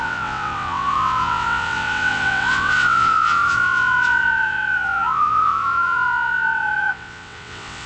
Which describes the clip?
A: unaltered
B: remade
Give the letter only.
B